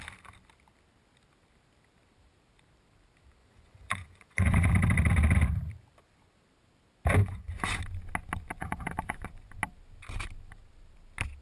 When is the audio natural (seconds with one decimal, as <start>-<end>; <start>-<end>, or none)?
0.0-3.4; 4.7-7.2; 7.8-8.6; 9.5-11.4